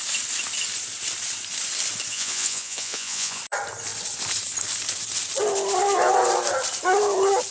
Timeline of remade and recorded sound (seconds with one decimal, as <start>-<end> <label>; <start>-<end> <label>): 0.0-2.1 recorded; 2.1-3.4 remade; 3.4-7.5 recorded